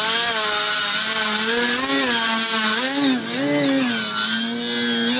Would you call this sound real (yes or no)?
yes